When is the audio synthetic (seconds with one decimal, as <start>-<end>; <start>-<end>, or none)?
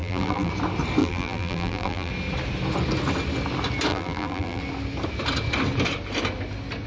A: 0.0-0.5; 1.0-2.1; 3.9-4.6